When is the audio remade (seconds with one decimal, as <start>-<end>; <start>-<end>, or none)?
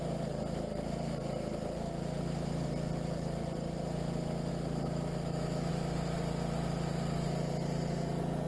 4.5-5.7